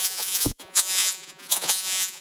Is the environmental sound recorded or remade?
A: remade